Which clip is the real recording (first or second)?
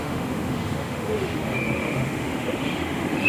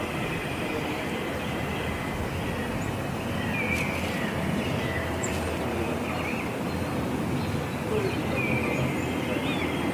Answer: second